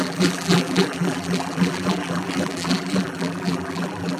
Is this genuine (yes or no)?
no